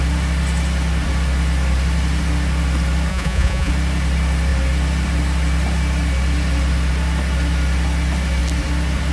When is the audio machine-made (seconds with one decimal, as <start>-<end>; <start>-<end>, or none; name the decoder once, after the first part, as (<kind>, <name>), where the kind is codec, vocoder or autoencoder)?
3.1-3.7 (vocoder, Vocos)